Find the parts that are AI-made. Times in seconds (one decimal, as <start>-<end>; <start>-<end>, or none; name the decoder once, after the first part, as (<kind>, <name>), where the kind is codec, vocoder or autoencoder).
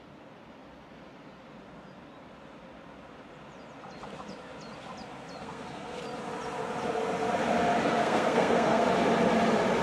5.4-6.0 (codec, SNAC); 8.0-8.9